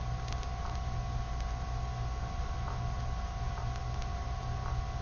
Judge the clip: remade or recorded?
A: recorded